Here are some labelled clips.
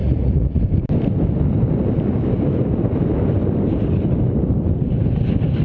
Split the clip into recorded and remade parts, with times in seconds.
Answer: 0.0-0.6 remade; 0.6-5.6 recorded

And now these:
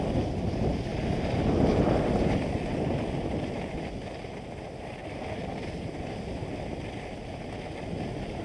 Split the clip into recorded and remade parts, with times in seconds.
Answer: 0.0-0.9 recorded; 0.9-3.0 remade; 3.0-8.4 recorded

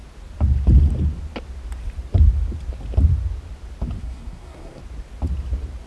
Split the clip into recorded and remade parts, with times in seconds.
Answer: 0.0-4.0 recorded; 4.0-4.8 remade; 4.8-5.9 recorded